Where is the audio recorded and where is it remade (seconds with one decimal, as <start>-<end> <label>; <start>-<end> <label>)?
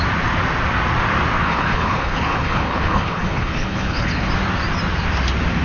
0.0-1.4 recorded; 1.4-4.3 remade; 4.3-5.6 recorded